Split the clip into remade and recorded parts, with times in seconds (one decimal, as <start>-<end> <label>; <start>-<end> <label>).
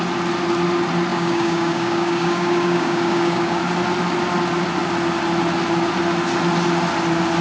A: 0.0-1.1 recorded; 1.1-3.6 remade; 3.6-7.4 recorded